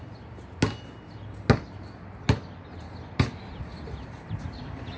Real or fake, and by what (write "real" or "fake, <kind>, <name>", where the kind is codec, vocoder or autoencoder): real